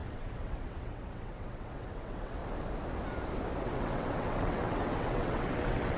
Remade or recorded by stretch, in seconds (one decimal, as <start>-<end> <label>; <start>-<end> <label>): 0.0-2.4 remade; 2.4-3.6 recorded; 3.6-6.0 remade